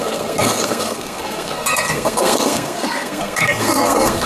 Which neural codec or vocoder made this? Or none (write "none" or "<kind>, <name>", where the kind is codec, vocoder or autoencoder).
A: codec, SNAC